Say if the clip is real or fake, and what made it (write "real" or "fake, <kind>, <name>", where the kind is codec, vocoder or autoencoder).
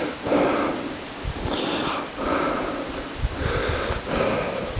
real